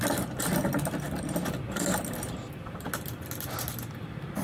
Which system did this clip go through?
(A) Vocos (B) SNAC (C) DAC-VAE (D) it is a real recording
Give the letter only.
D